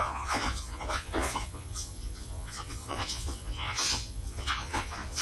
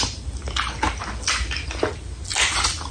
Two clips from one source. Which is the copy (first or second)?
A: first